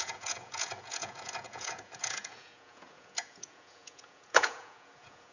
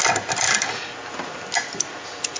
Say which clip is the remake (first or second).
first